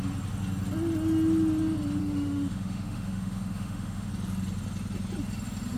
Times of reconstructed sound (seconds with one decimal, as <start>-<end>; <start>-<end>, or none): 2.0-4.1

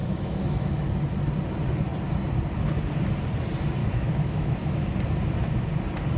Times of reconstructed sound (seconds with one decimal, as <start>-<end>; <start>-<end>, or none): 0.0-0.9; 3.8-4.9

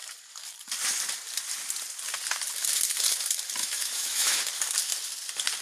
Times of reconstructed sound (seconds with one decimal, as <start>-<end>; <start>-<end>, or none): 3.6-4.4

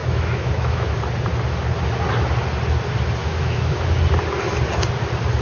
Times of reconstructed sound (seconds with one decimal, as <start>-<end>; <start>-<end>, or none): 0.0-1.0; 3.2-3.8